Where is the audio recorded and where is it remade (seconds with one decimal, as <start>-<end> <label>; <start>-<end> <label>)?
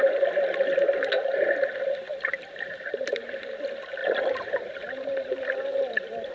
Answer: 0.0-2.1 recorded; 2.1-3.5 remade; 3.5-4.0 recorded; 4.0-6.3 remade